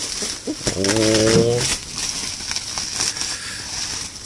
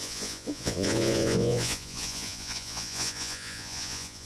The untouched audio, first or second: first